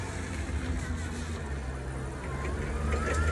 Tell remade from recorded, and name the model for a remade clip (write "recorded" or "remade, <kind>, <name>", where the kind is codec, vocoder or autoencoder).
recorded